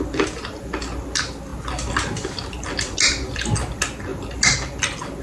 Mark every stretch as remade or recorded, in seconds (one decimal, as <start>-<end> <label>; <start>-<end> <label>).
0.0-5.2 recorded